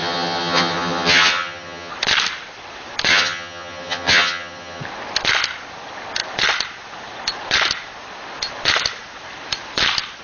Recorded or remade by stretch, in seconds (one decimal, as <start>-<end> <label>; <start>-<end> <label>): 0.0-1.9 remade; 1.9-3.1 recorded; 3.1-4.8 remade; 4.8-10.2 recorded